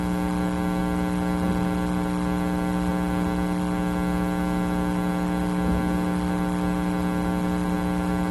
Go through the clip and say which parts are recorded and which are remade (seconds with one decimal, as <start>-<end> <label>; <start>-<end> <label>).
0.0-8.3 recorded